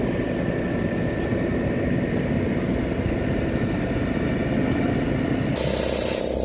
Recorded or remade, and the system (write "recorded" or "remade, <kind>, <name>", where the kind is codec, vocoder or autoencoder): recorded